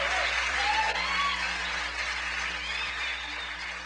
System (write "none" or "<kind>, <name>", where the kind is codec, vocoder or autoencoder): none